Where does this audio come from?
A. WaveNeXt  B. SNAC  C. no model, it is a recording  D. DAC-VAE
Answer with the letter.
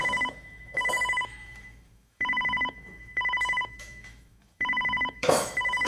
D